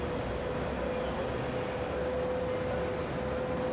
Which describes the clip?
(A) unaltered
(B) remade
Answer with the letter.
A